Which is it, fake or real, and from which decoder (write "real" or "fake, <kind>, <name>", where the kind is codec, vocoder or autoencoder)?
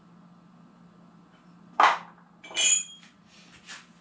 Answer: real